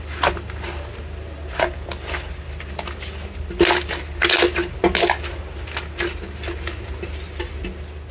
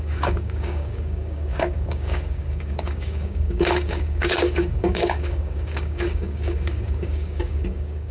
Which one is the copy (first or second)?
second